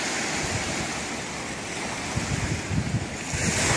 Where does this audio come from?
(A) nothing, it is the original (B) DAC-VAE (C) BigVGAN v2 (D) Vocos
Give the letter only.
A